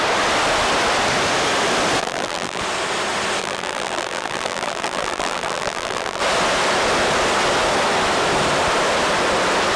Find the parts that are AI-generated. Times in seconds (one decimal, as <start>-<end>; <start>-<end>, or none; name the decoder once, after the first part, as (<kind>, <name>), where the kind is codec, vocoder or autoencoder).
2.0-2.6 (vocoder, BigVGAN v2); 3.4-6.2